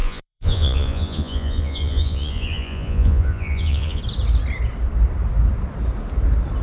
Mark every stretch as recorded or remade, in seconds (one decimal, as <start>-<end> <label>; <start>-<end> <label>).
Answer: 0.0-4.0 remade; 4.0-6.6 recorded